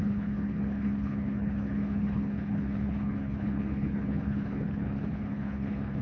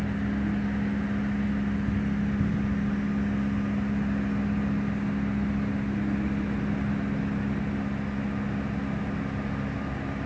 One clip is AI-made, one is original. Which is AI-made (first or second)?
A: first